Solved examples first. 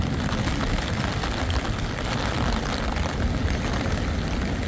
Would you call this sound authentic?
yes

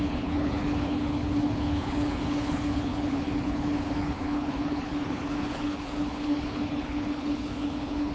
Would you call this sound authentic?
no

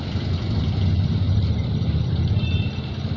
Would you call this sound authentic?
no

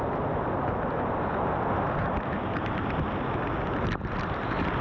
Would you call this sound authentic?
yes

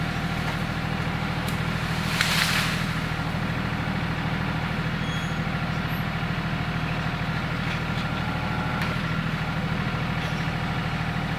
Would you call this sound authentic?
yes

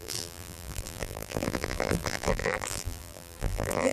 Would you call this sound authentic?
no